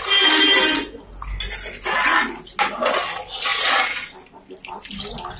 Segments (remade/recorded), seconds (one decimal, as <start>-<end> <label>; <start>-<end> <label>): 0.0-5.4 recorded

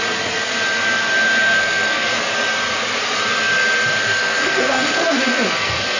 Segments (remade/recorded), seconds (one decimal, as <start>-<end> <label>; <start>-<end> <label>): 0.0-1.4 recorded; 1.4-2.2 remade; 2.2-4.0 recorded; 4.0-6.0 remade

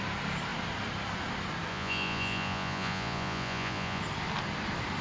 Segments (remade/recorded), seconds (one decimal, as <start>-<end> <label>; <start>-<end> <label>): 0.0-1.7 recorded; 1.7-4.0 remade; 4.0-5.0 recorded

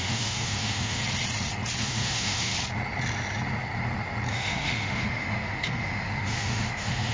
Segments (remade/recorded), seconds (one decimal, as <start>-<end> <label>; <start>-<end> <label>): 0.0-1.0 remade; 1.0-1.8 recorded; 1.8-2.5 remade; 2.5-4.3 recorded; 4.3-7.1 remade